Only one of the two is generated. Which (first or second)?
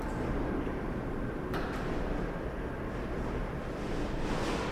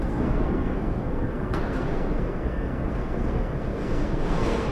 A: second